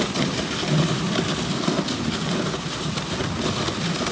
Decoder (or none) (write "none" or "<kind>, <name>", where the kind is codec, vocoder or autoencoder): none